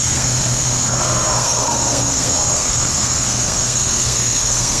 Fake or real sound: fake